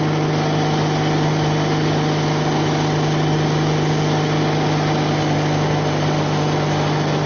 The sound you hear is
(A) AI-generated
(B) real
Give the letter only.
B